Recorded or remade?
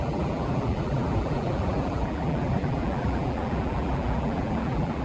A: remade